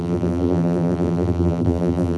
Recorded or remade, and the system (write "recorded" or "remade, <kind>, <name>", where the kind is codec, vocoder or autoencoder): remade, vocoder, BigVGAN v2